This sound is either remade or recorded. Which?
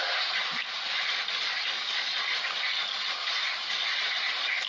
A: recorded